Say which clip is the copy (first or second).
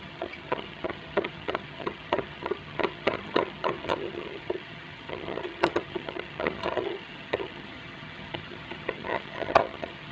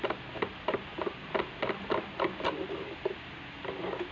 first